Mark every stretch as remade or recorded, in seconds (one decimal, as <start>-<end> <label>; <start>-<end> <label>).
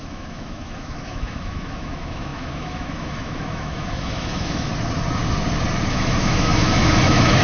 0.0-4.7 remade; 4.7-5.9 recorded; 5.9-7.4 remade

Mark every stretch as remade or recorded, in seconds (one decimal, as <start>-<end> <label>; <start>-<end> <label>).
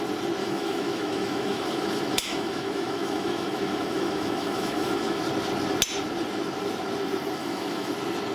0.0-0.4 recorded; 0.4-5.2 remade; 5.2-7.4 recorded; 7.4-7.9 remade; 7.9-8.3 recorded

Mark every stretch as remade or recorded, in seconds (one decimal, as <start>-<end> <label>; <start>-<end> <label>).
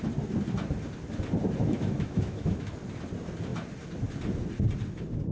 0.0-1.6 recorded; 1.6-2.7 remade; 2.7-5.3 recorded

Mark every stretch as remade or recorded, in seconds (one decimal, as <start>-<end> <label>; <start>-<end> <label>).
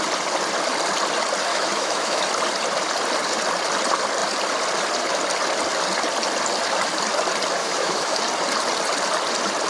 0.0-1.5 recorded; 1.5-2.2 remade; 2.2-7.6 recorded; 7.6-8.2 remade; 8.2-9.7 recorded